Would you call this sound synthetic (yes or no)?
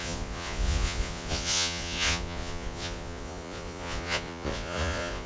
yes